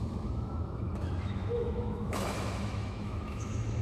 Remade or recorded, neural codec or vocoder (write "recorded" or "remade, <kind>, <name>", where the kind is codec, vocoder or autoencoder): remade, autoencoder, DAC-VAE